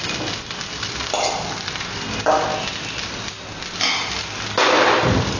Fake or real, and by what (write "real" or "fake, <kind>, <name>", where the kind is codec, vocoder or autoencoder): real